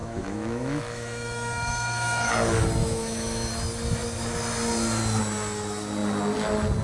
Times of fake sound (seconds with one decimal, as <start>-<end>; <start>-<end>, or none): 0.0-2.3; 2.8-3.5